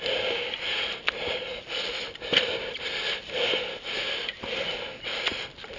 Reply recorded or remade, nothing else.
recorded